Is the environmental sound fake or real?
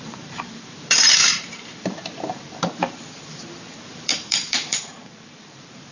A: fake